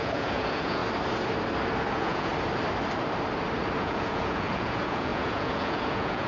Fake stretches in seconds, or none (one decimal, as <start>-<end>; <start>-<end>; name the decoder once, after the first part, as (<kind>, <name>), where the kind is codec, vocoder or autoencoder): 0.0-0.8 (vocoder, Vocos); 1.9-2.3; 3.8-6.3